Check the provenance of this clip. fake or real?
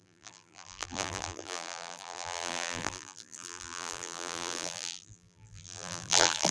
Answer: fake